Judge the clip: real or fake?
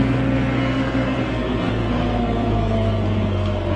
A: fake